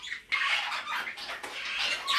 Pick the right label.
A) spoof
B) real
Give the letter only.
B